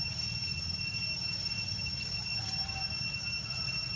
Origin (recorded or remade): recorded